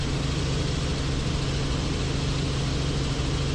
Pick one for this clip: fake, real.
real